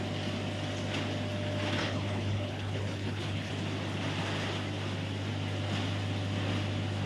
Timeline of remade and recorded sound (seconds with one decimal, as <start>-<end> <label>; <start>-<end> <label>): 0.0-1.8 recorded; 1.8-3.5 remade; 3.5-7.1 recorded